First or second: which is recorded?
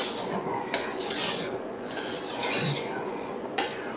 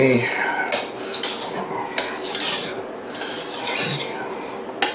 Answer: second